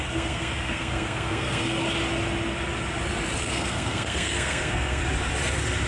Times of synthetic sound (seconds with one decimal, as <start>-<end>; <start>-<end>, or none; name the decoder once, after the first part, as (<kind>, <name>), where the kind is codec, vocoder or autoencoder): 0.0-1.8 (codec, SNAC); 3.4-5.0